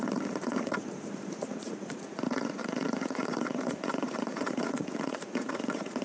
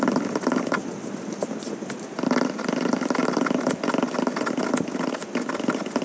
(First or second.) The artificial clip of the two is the first